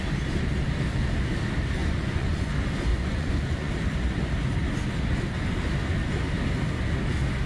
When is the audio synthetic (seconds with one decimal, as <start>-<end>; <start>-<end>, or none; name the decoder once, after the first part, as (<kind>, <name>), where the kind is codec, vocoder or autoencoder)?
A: 1.8-2.5 (vocoder, Vocos); 2.9-3.7